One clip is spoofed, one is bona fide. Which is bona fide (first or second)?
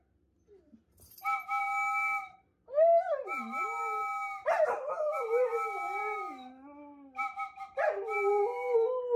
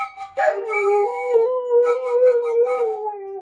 first